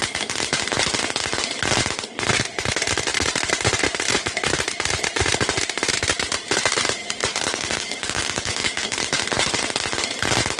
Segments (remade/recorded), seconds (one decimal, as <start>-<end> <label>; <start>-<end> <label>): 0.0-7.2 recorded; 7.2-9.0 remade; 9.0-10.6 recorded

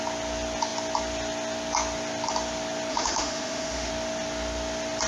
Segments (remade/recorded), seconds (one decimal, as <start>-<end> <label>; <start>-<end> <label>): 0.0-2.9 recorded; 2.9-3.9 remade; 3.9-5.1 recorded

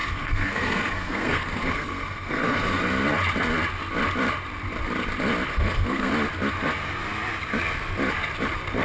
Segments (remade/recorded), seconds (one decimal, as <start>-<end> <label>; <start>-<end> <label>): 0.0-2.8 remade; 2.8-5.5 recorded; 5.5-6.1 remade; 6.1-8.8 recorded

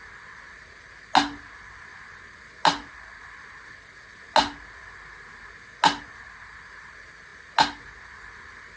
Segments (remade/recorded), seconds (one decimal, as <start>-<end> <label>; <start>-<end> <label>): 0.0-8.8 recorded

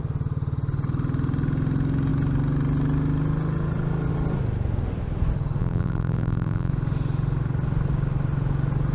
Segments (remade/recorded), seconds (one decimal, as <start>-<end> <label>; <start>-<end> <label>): 0.0-5.6 recorded; 5.6-6.7 remade; 6.7-8.9 recorded

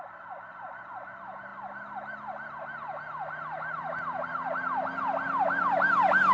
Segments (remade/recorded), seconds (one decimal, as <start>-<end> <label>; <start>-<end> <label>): 0.0-6.3 recorded

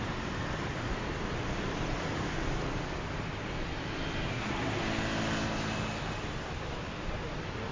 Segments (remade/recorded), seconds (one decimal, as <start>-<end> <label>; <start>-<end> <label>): 0.0-4.3 recorded; 4.3-4.8 remade; 4.8-7.7 recorded